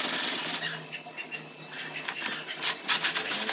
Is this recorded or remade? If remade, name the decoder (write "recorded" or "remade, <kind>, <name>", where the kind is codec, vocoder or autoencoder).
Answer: recorded